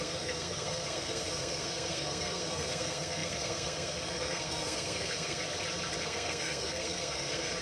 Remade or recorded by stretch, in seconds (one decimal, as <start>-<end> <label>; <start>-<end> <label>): 0.0-5.4 remade; 5.4-6.0 recorded; 6.0-7.6 remade